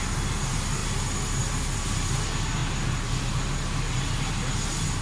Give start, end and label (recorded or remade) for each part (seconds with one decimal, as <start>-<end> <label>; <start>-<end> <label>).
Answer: 0.0-5.0 recorded